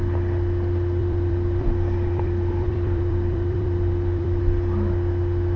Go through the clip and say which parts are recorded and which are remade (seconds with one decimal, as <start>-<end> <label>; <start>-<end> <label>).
0.0-1.0 recorded; 1.0-4.4 remade; 4.4-5.6 recorded